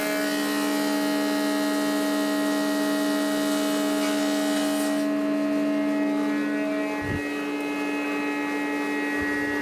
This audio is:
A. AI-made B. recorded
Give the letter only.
B